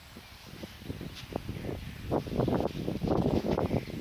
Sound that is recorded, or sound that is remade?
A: recorded